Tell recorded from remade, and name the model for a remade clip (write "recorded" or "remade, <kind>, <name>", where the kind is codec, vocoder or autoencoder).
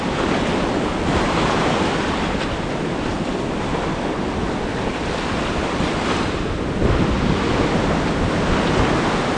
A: recorded